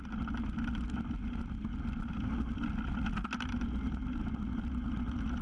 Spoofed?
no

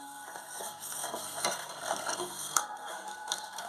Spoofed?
yes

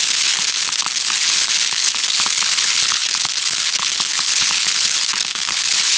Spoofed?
yes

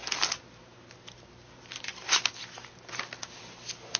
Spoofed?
no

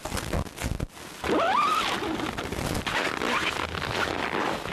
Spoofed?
no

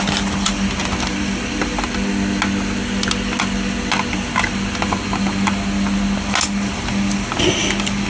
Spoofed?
no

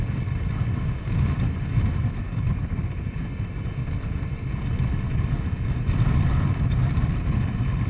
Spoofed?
no